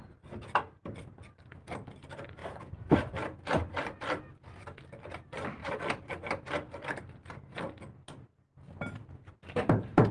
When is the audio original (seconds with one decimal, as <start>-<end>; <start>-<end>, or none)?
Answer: 0.0-2.4; 3.5-9.0